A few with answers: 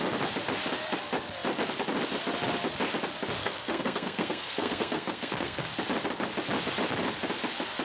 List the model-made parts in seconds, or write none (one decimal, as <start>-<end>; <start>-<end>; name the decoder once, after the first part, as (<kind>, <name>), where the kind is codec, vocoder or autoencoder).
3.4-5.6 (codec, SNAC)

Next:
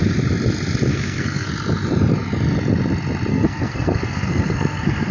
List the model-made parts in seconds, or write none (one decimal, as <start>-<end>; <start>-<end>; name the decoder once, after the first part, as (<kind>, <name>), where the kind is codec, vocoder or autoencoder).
0.9-1.5 (codec, SNAC); 3.3-5.1

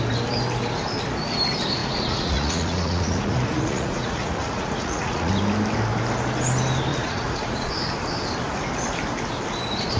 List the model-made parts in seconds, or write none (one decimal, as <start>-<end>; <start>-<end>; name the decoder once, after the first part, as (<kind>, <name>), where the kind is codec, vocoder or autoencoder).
1.8-5.3 (vocoder, Vocos); 6.9-7.7

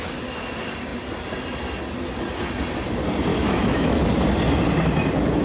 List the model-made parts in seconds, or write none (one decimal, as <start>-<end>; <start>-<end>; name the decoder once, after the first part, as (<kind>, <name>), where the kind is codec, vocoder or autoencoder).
3.3-4.0 (autoencoder, DAC-VAE)

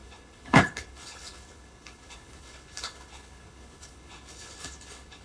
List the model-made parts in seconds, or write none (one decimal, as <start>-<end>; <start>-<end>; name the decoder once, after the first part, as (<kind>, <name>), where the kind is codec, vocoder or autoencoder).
0.0-5.2 (codec, HILCodec)

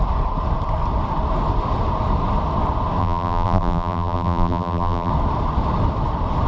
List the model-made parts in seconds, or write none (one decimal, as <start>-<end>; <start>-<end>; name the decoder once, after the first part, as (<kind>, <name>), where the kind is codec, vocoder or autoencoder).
3.0-5.1 (vocoder, BigVGAN v2)

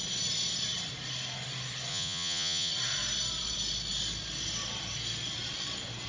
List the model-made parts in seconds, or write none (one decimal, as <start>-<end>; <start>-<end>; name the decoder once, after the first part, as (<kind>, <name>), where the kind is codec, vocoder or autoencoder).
1.9-2.7 (vocoder, Vocos)

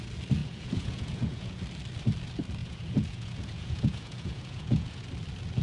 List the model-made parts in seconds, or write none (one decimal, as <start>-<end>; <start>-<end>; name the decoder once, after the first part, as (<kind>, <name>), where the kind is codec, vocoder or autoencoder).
0.4-1.6 (vocoder, Vocos); 2.6-5.1